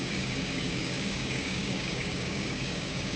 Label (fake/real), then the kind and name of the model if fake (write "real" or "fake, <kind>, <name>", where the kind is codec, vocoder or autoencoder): fake, codec, DAC